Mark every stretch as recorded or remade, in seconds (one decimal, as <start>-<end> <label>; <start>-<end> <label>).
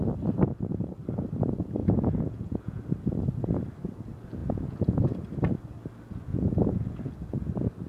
0.0-1.8 recorded; 1.8-2.8 remade; 2.8-4.4 recorded; 4.4-5.1 remade; 5.1-6.3 recorded; 6.3-7.1 remade; 7.1-7.9 recorded